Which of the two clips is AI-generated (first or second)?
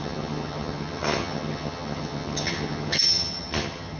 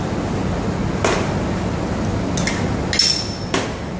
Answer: first